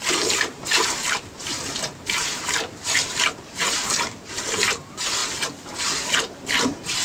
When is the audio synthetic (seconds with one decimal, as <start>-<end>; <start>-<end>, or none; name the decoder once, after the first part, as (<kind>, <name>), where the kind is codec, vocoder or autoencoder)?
0.0-5.2 (vocoder, BigVGAN v2); 6.6-7.0